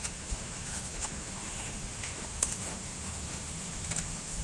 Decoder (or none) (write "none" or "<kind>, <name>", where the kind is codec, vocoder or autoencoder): autoencoder, DAC-VAE